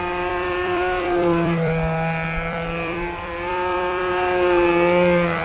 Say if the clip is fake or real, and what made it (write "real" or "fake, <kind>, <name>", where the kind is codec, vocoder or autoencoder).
fake, vocoder, BigVGAN v2